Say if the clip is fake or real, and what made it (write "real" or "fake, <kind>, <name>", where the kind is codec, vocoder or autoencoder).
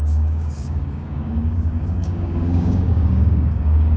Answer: fake, codec, DAC